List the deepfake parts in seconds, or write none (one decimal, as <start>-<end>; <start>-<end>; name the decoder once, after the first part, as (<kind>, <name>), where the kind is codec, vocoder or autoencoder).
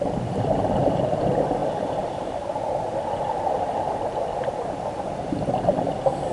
none